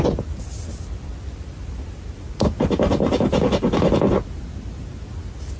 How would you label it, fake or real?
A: real